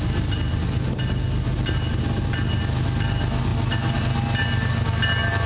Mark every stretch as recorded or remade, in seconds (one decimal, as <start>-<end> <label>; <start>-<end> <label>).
0.0-5.5 recorded